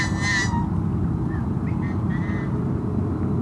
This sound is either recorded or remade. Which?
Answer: recorded